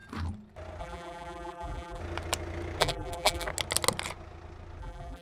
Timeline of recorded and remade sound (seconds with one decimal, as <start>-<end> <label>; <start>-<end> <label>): 0.0-0.8 recorded; 0.8-2.0 remade; 2.0-2.8 recorded; 2.8-3.5 remade; 3.5-4.8 recorded; 4.8-5.2 remade